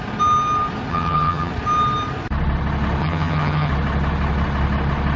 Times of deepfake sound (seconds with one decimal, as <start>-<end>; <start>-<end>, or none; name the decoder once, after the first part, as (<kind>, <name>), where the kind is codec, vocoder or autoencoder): 0.9-1.5 (vocoder, HiFi-GAN); 3.0-3.7